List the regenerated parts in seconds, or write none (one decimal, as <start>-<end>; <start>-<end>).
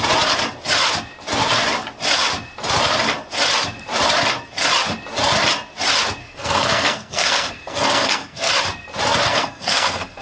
6.2-8.5; 9.3-10.2